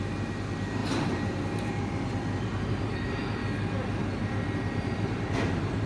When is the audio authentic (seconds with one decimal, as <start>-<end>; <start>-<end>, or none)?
3.4-4.8